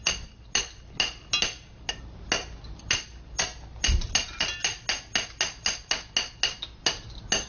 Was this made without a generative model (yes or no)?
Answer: yes